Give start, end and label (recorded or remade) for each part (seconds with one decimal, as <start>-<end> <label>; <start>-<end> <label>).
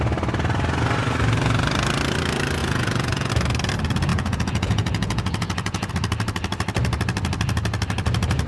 0.0-2.6 recorded; 2.6-3.3 remade; 3.3-4.1 recorded; 4.1-5.9 remade; 5.9-8.5 recorded